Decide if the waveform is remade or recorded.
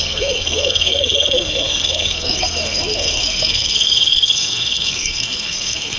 remade